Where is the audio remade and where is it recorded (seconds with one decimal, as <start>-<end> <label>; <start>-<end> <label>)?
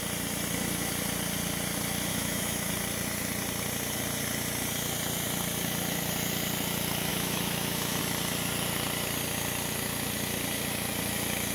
0.0-2.1 recorded; 2.1-2.7 remade; 2.7-7.1 recorded; 7.1-8.0 remade; 8.0-11.5 recorded